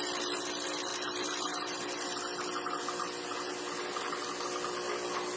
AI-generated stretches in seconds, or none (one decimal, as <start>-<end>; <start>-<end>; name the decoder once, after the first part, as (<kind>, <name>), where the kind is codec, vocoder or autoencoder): none